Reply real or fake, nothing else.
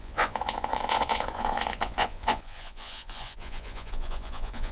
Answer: fake